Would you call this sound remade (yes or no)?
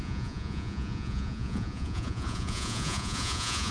yes